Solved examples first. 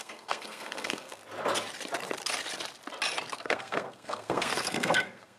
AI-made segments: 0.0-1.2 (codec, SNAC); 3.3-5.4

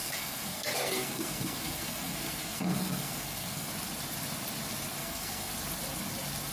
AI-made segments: 0.0-3.7 (codec, SNAC); 5.0-5.5

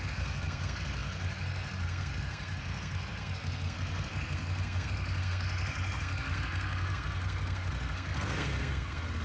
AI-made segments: 0.0-9.2 (codec, SNAC)

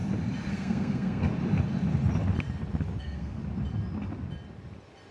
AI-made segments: 0.5-1.3 (codec, SNAC); 3.0-3.4